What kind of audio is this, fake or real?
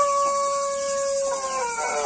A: real